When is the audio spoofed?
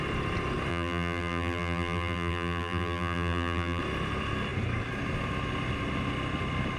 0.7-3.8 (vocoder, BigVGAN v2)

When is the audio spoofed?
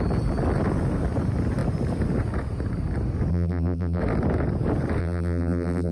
3.3-4.0 (vocoder, BigVGAN v2); 5.0-5.9